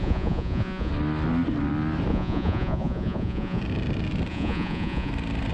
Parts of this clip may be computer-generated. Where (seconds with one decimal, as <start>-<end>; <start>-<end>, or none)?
0.0-0.9; 2.1-3.6; 4.3-5.1